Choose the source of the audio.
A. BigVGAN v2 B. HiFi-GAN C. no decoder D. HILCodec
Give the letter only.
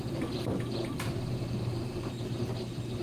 A